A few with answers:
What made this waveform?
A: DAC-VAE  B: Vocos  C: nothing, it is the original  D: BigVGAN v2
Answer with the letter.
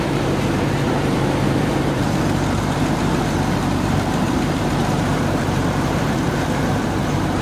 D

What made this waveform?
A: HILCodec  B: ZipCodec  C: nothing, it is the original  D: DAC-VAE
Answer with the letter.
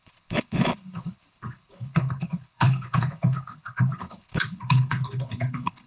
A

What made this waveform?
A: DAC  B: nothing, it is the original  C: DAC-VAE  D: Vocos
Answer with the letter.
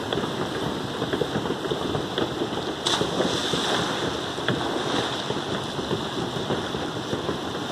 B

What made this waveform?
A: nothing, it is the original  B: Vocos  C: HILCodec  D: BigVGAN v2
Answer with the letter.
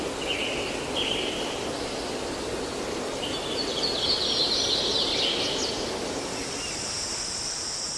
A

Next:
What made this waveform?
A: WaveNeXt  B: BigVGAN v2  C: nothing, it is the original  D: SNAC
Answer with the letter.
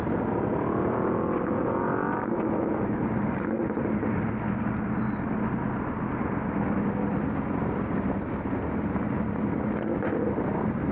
C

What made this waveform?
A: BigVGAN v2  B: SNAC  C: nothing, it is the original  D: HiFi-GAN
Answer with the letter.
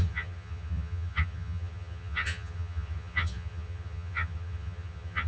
D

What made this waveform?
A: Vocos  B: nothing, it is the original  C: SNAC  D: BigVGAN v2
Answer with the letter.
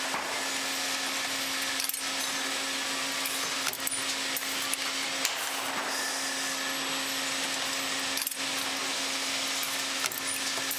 B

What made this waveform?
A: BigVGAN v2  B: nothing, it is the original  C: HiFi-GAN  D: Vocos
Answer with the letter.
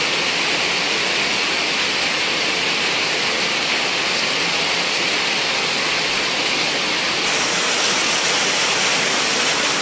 B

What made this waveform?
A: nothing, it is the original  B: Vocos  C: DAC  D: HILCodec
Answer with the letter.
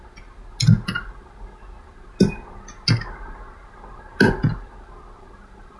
A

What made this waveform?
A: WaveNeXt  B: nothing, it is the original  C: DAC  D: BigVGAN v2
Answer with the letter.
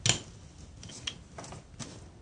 B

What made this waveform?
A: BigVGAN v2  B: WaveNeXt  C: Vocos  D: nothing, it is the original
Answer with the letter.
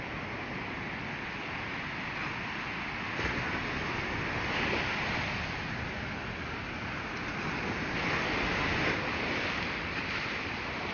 D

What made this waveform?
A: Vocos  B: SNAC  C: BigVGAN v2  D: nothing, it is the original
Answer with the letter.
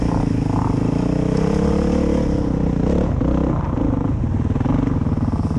D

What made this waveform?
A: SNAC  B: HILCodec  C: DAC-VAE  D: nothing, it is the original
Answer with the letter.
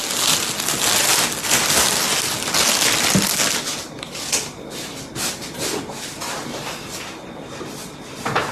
D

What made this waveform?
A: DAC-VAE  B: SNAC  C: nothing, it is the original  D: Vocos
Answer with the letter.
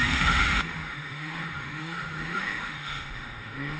A